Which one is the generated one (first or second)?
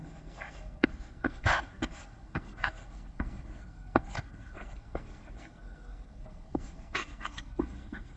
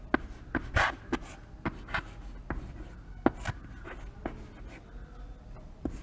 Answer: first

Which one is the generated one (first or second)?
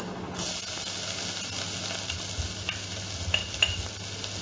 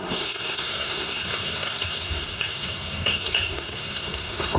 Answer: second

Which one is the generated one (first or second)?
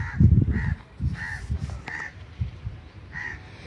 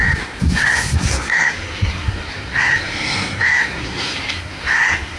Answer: second